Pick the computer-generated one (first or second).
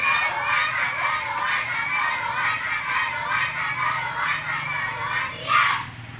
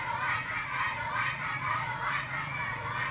second